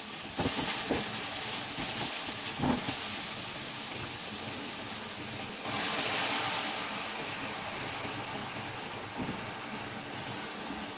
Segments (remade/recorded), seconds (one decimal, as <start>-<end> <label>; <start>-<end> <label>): 0.0-11.0 recorded